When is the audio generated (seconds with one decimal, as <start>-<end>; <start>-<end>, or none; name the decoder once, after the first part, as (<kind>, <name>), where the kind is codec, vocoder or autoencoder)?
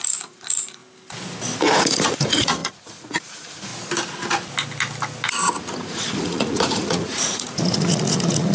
0.0-0.8 (vocoder, Vocos); 1.6-3.7; 5.7-8.5